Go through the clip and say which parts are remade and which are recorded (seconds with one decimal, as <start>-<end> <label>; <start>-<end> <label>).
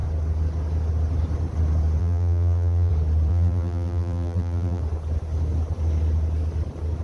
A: 0.0-2.0 recorded; 2.0-2.9 remade; 2.9-3.3 recorded; 3.3-4.8 remade; 4.8-7.0 recorded